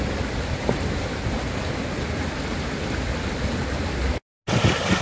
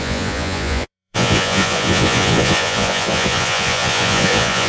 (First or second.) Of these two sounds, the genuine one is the first